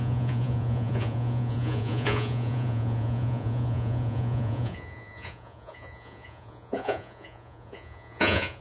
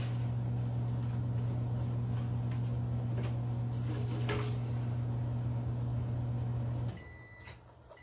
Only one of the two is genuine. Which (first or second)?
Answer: second